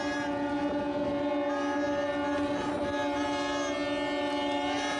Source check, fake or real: real